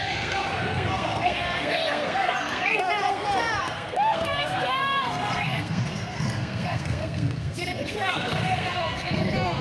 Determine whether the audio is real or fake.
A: fake